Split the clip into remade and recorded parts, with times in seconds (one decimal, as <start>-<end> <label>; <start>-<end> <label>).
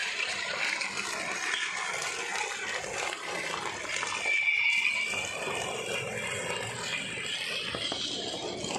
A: 0.0-0.6 remade; 0.6-8.8 recorded